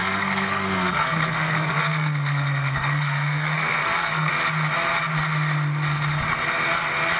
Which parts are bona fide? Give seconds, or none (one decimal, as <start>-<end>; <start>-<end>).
4.3-7.2